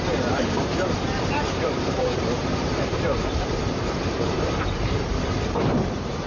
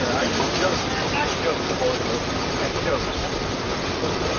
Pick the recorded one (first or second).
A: second